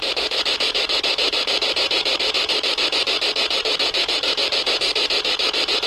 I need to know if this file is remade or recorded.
remade